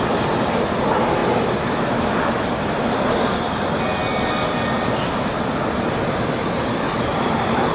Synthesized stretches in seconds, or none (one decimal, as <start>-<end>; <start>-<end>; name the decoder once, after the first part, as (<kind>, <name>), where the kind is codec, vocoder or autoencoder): 7.1-7.7 (vocoder, BigVGAN v2)